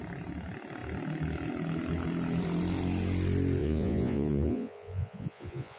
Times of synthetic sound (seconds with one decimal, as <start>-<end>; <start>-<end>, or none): 3.6-5.8

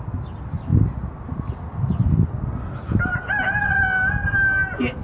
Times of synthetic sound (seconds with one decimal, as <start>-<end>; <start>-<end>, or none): none

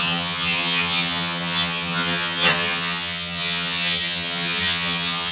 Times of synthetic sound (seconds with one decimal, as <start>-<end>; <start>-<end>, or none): 0.0-5.3

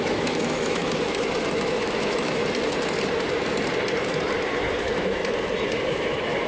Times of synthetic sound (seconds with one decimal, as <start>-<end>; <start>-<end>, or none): 0.0-2.4; 4.8-5.2; 5.9-6.5

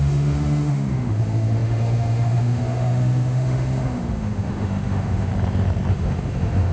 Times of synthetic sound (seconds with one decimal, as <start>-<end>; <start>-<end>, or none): 0.0-5.3; 5.9-6.7

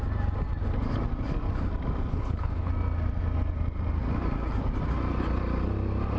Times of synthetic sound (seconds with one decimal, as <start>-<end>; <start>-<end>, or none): 2.1-2.7

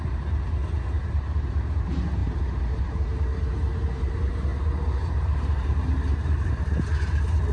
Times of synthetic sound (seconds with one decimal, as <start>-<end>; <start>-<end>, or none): 0.0-3.3; 4.0-7.5